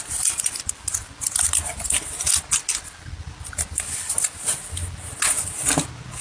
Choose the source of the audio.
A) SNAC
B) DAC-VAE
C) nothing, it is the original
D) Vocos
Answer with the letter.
C